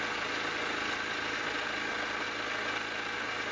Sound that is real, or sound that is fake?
real